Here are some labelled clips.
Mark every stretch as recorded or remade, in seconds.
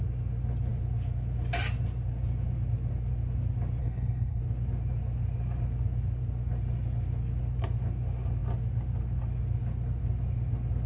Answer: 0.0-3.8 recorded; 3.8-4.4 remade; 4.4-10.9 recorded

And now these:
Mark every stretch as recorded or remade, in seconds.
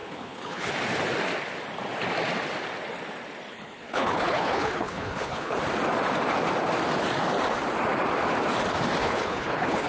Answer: 0.0-0.7 remade; 0.7-3.5 recorded; 3.5-5.5 remade; 5.5-9.0 recorded; 9.0-9.9 remade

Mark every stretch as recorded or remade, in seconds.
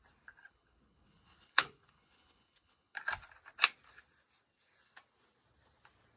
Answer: 0.0-0.4 recorded; 0.4-3.0 remade; 3.0-6.2 recorded